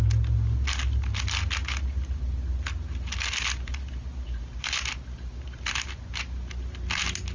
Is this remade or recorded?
recorded